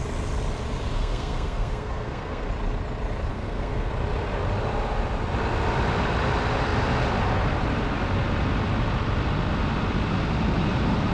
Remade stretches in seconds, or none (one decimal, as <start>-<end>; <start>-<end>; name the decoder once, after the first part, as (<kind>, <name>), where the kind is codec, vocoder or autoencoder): 0.9-2.5 (codec, SNAC); 3.3-3.9